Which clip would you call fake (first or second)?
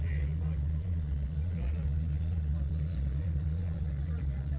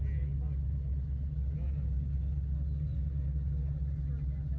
first